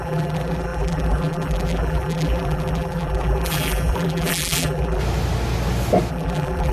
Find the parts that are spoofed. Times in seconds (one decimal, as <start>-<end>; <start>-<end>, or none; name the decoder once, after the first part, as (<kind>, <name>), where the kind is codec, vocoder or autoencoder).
0.0-5.0 (vocoder, BigVGAN v2); 6.1-6.7

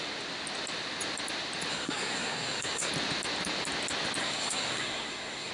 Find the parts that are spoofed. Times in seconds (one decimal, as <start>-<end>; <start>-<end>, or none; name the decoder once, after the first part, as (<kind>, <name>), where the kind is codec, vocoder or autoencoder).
1.7-2.9 (codec, SNAC); 4.2-5.5

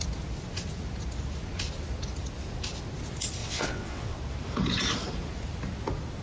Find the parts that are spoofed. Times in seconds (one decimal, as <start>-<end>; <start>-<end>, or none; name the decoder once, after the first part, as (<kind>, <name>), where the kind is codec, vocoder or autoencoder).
3.4-4.2 (vocoder, WaveNeXt)

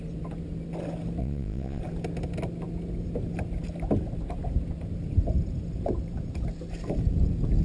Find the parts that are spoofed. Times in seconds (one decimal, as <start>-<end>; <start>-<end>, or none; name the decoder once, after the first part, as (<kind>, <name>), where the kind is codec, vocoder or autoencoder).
1.2-1.8 (vocoder, Vocos)

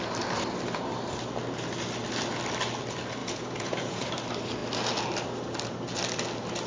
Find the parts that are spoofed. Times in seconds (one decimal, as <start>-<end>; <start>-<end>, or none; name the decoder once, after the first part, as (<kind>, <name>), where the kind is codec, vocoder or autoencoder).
3.2-4.1 (vocoder, Vocos)